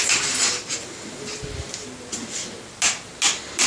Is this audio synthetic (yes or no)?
no